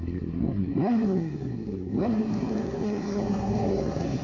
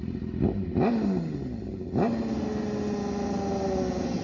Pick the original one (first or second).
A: second